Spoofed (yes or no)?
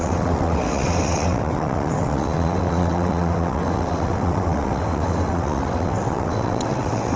yes